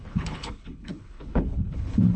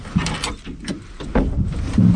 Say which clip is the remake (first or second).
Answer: first